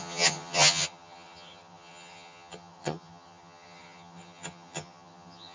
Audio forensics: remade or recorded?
remade